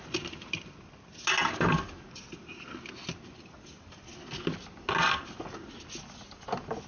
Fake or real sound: real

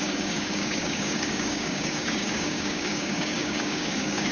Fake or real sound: fake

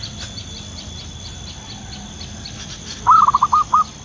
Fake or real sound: real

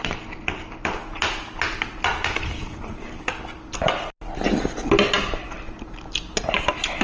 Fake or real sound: real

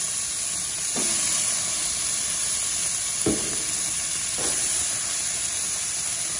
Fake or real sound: real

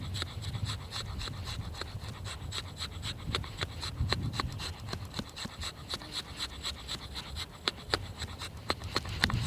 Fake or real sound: real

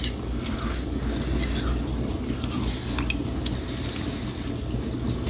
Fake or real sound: real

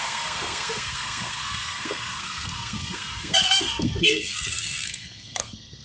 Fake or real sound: fake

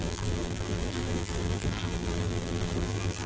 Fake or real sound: fake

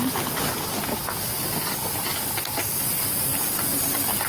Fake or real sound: real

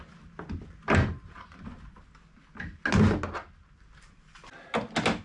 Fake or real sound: real